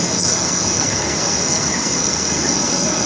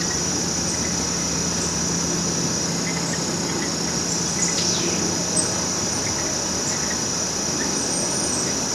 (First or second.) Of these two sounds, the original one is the second